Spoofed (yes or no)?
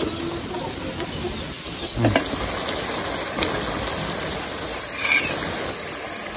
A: no